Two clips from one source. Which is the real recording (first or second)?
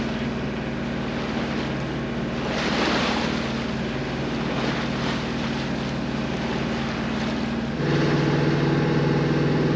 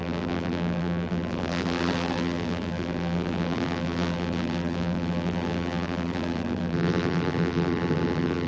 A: first